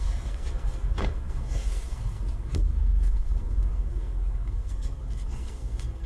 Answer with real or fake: fake